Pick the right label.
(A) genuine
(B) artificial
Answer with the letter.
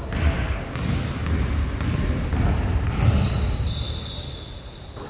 A